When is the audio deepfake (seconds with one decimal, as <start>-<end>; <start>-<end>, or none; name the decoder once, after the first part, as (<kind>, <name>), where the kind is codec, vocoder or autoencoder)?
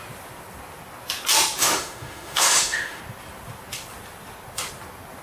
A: 1.6-3.0 (autoencoder, DAC-VAE)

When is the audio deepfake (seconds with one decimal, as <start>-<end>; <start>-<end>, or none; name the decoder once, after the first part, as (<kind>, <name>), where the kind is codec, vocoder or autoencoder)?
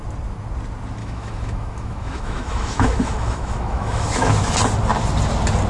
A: 1.0-4.4 (autoencoder, DAC-VAE)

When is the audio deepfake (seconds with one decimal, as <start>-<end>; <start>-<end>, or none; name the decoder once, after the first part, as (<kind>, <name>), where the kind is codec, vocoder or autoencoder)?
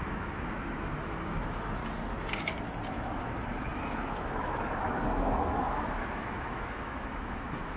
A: 0.0-1.8 (autoencoder, DAC-VAE); 2.9-7.8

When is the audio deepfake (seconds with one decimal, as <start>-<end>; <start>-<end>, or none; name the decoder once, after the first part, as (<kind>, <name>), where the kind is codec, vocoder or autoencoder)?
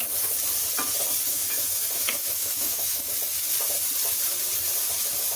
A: 1.3-3.1 (autoencoder, DAC-VAE)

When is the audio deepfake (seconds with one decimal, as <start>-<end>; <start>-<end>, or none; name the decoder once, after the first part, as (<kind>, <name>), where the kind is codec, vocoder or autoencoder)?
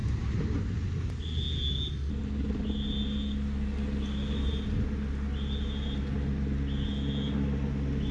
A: none